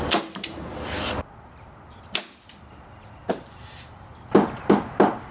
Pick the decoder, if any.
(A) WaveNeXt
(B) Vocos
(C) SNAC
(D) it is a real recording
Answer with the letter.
D